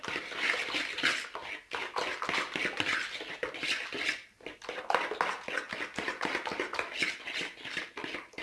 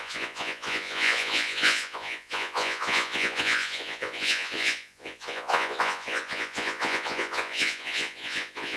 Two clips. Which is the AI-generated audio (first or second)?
second